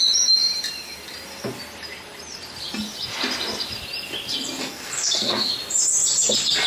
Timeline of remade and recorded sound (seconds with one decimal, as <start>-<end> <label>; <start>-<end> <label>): 0.0-4.6 recorded; 4.6-5.5 remade; 5.5-6.7 recorded